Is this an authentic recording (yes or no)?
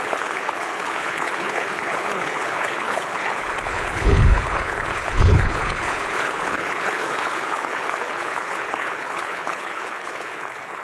no